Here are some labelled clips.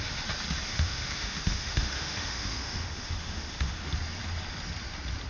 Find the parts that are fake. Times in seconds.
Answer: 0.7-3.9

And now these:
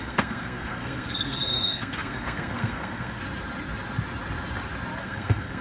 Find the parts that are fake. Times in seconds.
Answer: 0.0-3.2; 5.0-5.6